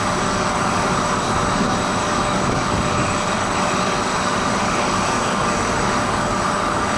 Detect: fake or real fake